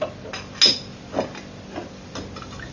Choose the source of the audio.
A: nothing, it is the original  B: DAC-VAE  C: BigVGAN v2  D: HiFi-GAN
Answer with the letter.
A